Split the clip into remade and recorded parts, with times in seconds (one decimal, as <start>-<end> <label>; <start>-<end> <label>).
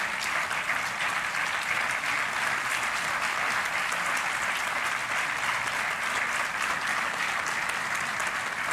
0.0-8.7 recorded